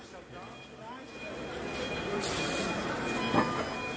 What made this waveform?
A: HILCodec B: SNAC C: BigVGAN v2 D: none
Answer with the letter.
D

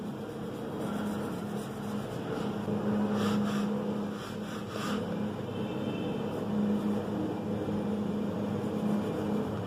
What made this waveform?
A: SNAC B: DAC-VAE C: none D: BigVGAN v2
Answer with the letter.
C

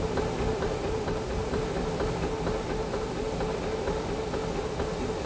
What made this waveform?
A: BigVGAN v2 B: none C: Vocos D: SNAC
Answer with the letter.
B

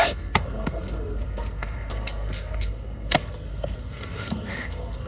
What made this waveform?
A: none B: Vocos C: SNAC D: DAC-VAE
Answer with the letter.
C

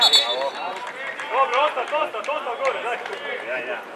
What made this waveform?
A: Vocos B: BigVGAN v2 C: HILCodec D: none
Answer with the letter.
D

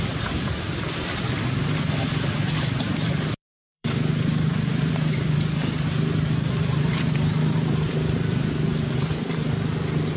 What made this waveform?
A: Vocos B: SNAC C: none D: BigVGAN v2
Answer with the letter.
D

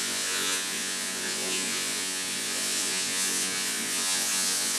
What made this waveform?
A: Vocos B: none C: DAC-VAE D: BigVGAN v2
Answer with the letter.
A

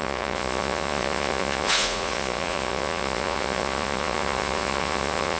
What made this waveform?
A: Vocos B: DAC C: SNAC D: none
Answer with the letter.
A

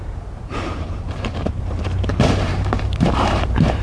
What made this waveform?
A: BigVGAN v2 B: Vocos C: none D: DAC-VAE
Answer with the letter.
A